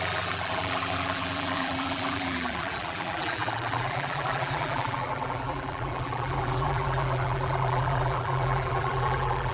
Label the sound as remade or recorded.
remade